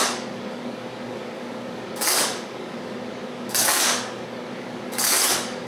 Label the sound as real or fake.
fake